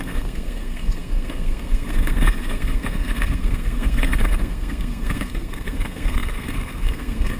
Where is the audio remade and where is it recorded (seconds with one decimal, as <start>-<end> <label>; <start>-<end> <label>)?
0.0-7.4 remade

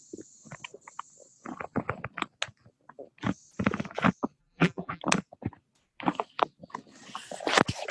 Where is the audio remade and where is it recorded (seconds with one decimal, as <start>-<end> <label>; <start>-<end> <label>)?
0.0-4.4 recorded; 4.4-5.0 remade; 5.0-7.9 recorded